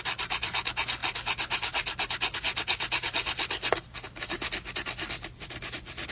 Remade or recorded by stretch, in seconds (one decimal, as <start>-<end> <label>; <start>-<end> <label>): 0.0-6.1 recorded